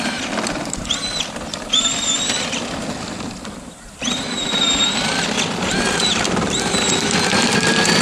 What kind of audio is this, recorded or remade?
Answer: remade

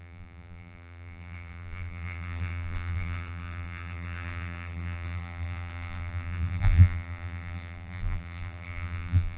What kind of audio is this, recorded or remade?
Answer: remade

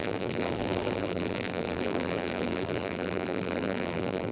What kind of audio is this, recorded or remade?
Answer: remade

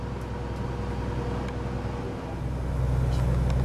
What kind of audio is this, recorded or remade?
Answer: recorded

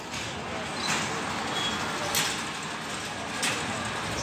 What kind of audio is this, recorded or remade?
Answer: recorded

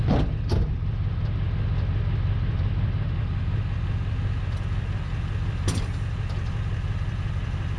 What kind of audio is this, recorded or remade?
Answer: recorded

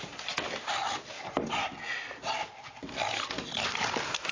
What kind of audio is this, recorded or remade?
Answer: recorded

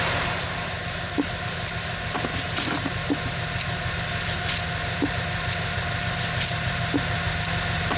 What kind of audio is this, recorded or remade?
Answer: remade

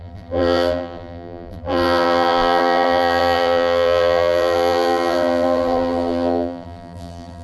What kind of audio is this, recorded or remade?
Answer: remade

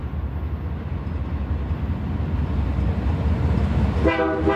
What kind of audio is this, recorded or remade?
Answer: recorded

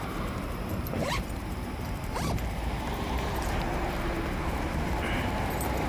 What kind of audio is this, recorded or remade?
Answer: remade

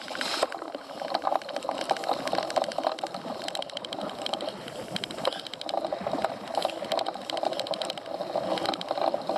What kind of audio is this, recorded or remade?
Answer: recorded